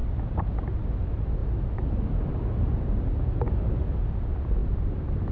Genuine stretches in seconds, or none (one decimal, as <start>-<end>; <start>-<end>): 0.0-5.3